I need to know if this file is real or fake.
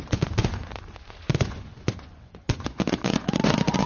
fake